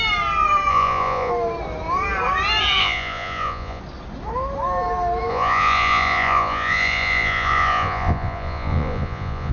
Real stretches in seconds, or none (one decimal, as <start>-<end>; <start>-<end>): 0.0-0.7; 1.3-2.8; 3.8-5.3